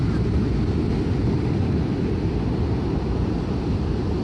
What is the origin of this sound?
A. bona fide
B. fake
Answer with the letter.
A